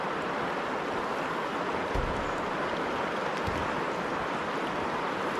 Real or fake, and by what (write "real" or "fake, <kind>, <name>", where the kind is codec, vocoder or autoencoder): real